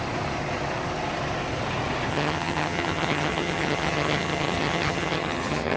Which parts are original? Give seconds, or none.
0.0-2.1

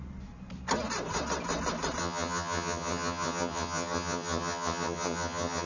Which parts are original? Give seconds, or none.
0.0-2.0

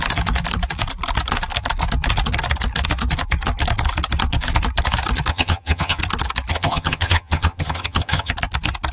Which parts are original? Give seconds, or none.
0.0-5.3; 6.0-6.5; 8.3-8.9